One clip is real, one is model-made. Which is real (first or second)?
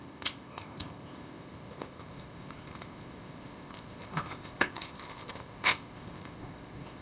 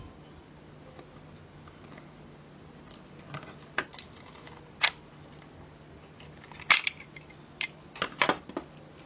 second